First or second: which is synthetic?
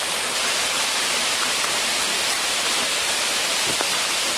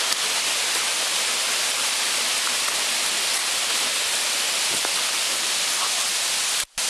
first